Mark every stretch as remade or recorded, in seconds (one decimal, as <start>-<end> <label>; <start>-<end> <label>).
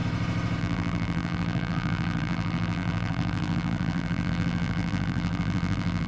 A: 0.0-0.6 recorded; 0.6-6.1 remade